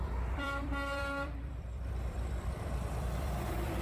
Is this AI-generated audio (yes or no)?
yes